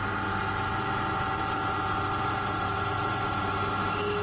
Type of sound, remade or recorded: recorded